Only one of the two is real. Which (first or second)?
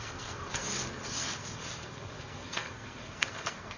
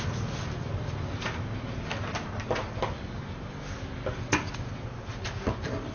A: second